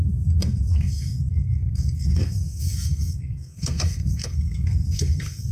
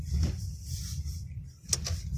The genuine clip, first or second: second